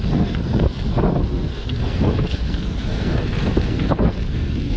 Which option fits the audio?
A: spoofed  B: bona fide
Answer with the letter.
A